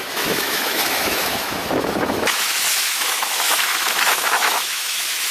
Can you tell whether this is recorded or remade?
remade